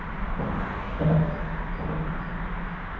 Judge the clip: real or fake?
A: real